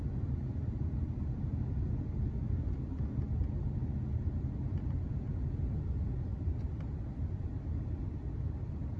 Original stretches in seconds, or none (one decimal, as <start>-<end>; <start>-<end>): 0.0-9.0